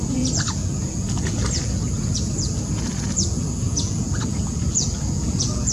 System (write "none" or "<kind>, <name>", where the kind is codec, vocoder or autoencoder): vocoder, Vocos